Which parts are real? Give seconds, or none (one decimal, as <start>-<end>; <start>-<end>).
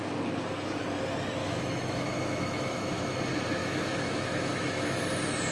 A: 0.0-1.4; 3.0-3.6; 5.0-5.5